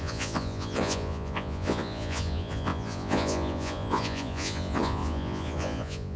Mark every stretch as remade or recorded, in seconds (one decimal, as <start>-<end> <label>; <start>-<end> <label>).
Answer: 0.0-6.2 remade